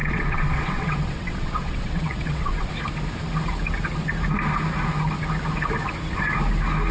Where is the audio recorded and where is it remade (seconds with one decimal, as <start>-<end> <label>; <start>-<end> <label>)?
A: 0.0-2.7 remade; 2.7-6.9 recorded